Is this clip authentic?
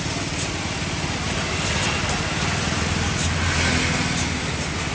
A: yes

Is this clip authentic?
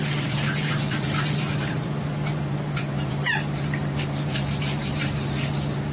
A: no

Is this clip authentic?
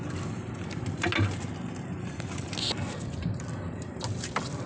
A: yes